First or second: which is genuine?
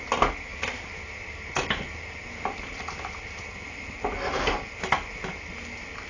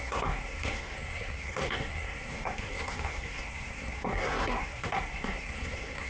first